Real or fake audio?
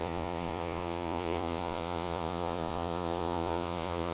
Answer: fake